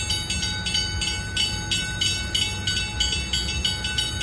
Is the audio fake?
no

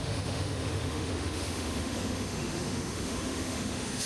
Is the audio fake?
yes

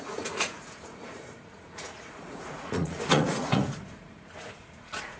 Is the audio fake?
yes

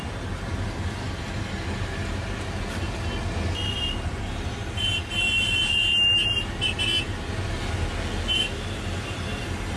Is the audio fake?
no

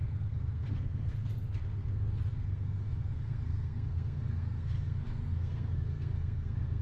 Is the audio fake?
yes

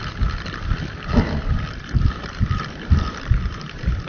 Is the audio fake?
yes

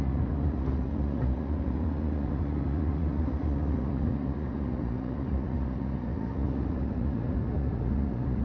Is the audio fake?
yes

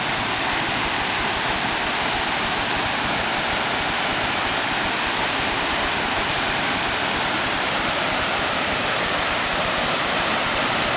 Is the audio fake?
yes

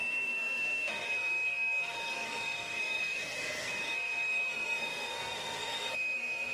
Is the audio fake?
yes